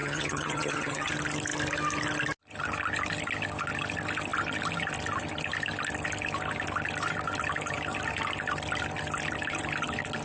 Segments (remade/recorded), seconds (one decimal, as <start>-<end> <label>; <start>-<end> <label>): 0.0-1.1 remade; 1.1-10.2 recorded